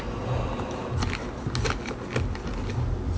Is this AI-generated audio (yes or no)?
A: no